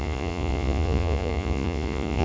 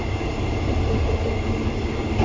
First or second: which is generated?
first